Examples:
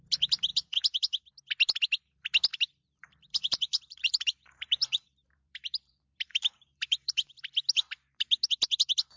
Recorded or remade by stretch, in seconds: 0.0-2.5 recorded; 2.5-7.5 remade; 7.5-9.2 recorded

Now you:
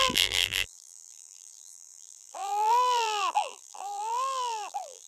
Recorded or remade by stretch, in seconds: 0.0-5.1 remade

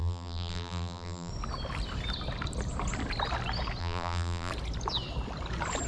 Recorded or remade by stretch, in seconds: 0.0-1.3 remade; 1.3-3.8 recorded; 3.8-4.5 remade; 4.5-5.9 recorded

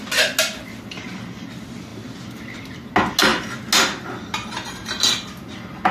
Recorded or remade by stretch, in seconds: 0.0-5.9 recorded